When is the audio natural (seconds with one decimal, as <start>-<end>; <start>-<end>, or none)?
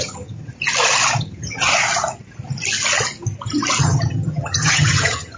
0.5-1.2; 1.7-3.8